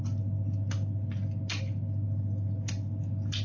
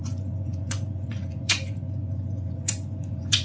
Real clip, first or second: first